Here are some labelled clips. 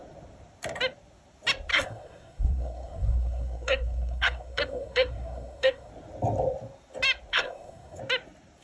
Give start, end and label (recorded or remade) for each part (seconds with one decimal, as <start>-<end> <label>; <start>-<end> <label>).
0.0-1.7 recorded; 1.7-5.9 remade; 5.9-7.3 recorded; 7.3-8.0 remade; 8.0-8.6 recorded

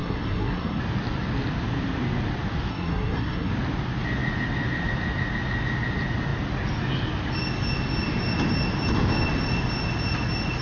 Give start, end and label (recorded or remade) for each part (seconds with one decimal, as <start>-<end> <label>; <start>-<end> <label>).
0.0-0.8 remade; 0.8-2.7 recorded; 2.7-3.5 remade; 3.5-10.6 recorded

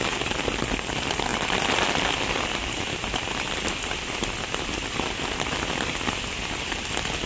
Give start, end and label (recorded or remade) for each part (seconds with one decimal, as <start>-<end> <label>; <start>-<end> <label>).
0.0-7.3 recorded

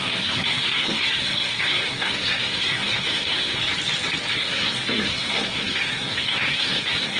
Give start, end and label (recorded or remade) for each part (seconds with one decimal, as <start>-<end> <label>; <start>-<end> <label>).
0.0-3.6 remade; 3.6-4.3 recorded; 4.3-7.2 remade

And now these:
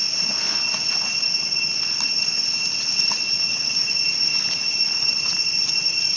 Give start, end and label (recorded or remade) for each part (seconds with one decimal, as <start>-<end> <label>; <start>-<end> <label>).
0.0-6.2 recorded